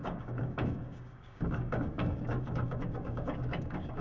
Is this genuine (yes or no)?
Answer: no